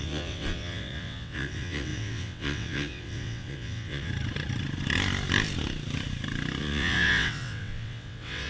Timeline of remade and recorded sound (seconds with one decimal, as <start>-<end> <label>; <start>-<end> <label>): 0.0-4.1 remade; 4.1-6.6 recorded; 6.6-8.5 remade